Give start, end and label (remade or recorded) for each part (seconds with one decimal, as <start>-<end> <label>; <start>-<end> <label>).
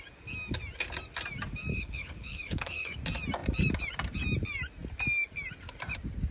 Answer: 0.0-1.7 recorded; 1.7-3.0 remade; 3.0-6.3 recorded